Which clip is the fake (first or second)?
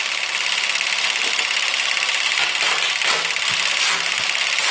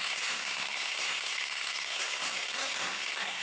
second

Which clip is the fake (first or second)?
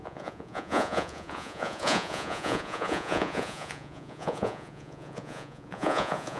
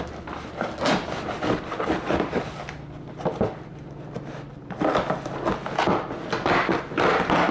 first